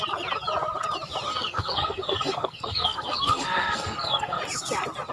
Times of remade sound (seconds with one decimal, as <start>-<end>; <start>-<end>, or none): 1.3-4.4